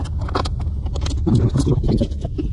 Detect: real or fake fake